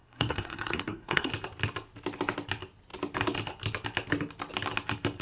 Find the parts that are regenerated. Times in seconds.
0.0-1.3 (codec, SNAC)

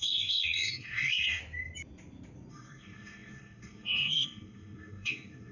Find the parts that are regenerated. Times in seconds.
0.0-1.4 (codec, SNAC); 2.5-5.5

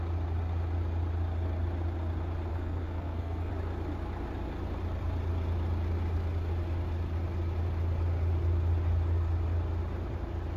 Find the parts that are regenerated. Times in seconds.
2.5-3.5 (codec, SNAC)